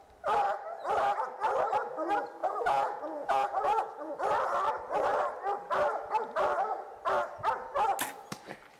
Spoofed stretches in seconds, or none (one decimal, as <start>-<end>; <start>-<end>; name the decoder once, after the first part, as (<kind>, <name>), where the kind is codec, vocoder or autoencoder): 2.4-4.1 (vocoder, Vocos)